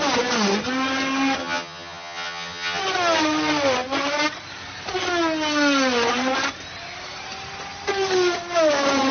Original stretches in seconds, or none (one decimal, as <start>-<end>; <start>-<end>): 0.0-1.4; 2.8-9.1